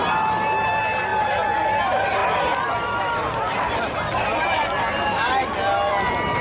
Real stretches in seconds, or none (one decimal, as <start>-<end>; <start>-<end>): 0.0-6.4